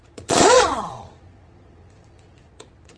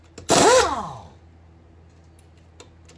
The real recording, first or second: second